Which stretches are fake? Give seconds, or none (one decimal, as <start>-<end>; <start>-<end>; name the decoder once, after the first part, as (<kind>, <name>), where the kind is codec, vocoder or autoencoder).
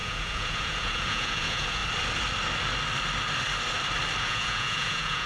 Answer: 0.0-1.8 (vocoder, Vocos); 4.2-5.3